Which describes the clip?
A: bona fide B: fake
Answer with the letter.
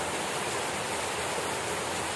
A